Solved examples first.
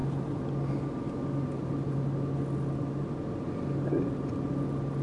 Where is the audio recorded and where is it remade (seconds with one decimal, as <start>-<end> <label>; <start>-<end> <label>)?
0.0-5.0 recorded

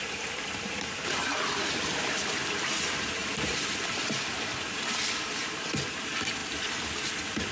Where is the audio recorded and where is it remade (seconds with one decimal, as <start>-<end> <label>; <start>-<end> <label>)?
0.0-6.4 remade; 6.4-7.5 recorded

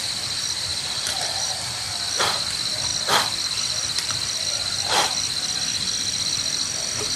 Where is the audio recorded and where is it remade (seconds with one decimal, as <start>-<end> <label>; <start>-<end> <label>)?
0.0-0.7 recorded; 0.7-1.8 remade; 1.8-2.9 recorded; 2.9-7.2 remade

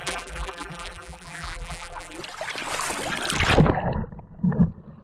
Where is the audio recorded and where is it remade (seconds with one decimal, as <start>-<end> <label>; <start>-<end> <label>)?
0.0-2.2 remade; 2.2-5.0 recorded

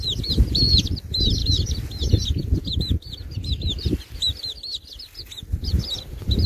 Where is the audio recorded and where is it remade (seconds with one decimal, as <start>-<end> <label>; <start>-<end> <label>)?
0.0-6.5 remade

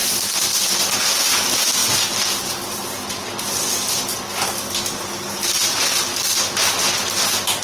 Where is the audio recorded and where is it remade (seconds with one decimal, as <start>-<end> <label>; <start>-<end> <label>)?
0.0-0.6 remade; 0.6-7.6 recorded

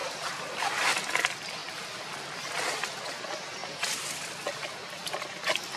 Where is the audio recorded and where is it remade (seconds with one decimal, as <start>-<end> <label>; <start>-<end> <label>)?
0.0-0.7 remade; 0.7-5.8 recorded